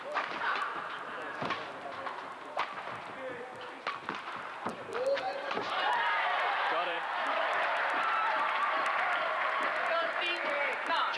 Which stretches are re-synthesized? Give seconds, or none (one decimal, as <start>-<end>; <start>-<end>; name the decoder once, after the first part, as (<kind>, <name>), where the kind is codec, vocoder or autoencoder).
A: 4.7-8.3 (vocoder, BigVGAN v2)